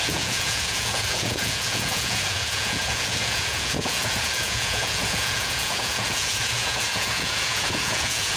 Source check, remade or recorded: remade